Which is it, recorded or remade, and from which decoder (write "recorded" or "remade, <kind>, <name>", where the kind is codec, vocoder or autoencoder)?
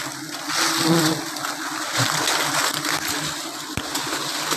recorded